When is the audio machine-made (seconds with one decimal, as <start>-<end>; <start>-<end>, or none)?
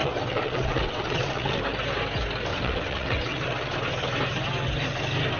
0.0-1.6; 2.5-3.7